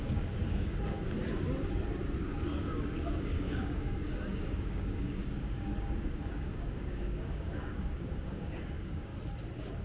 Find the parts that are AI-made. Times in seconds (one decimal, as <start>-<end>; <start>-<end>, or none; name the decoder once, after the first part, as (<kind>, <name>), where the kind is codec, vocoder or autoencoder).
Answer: 0.0-1.2 (codec, DAC); 2.2-9.1